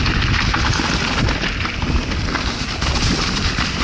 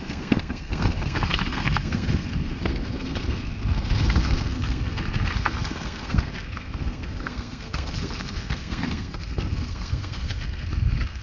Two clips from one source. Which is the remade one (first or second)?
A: second